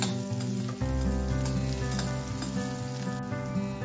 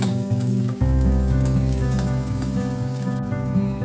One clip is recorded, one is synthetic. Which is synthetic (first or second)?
second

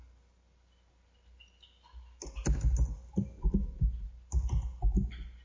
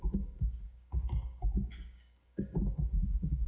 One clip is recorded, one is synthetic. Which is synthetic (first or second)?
second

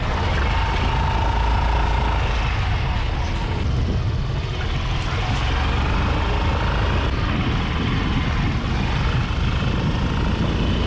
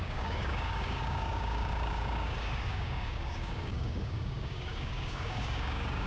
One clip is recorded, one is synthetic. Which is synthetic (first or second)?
second